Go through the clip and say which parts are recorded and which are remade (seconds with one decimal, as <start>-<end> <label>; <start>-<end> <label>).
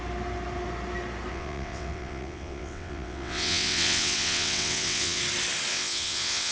0.0-1.3 recorded; 1.3-5.2 remade; 5.2-5.7 recorded; 5.7-6.5 remade